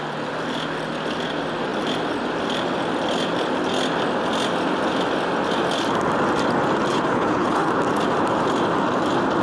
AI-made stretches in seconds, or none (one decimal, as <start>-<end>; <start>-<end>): 6.9-7.7